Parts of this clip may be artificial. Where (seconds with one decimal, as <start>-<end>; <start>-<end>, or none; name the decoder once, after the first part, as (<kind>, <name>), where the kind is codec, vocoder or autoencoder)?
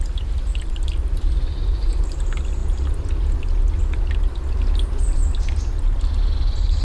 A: none